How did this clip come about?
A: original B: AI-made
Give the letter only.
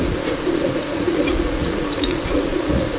B